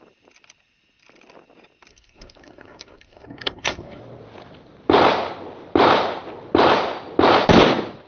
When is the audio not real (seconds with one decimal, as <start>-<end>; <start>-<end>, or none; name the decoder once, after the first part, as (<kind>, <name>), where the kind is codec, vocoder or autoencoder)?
1.9-4.0 (codec, SNAC)